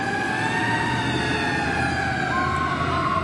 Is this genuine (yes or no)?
yes